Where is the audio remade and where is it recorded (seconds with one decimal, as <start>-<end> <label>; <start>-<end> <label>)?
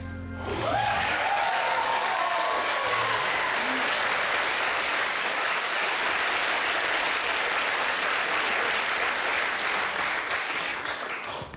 0.0-0.5 recorded; 0.5-2.9 remade; 2.9-4.9 recorded; 4.9-6.0 remade; 6.0-10.4 recorded; 10.4-11.6 remade